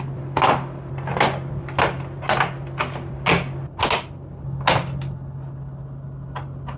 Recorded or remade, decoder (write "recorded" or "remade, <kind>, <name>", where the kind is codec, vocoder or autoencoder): recorded